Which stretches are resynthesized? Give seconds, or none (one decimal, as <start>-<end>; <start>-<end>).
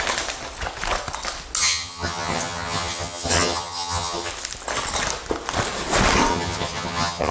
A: 1.6-4.3; 6.3-7.3